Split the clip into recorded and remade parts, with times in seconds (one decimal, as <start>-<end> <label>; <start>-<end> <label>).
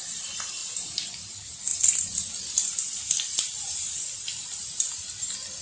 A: 0.0-0.6 recorded; 0.6-1.1 remade; 1.1-5.6 recorded